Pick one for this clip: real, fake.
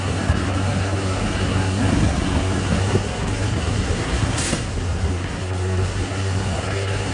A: fake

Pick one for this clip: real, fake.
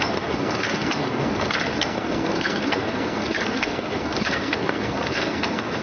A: fake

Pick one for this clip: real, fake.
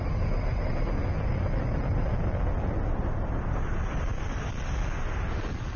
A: real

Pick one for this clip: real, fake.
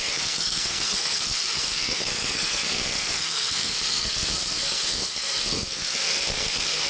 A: fake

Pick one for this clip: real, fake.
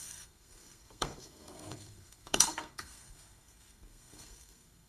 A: fake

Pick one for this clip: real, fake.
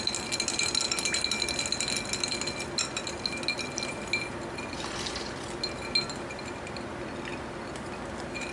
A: real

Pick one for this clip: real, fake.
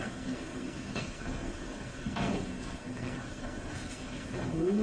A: fake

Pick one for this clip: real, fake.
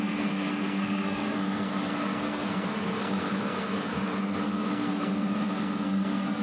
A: fake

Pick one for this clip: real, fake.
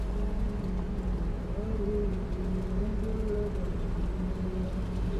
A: real